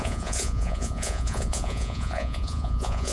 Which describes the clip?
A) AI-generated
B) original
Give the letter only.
A